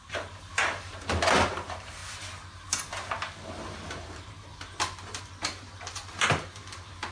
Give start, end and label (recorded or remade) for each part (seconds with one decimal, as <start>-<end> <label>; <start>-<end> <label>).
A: 0.0-2.0 remade; 2.0-3.9 recorded; 3.9-4.5 remade; 4.5-5.2 recorded; 5.2-7.1 remade